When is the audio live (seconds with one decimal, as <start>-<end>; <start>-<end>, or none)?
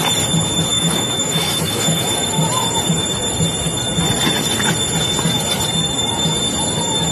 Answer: 0.0-0.7; 2.4-7.1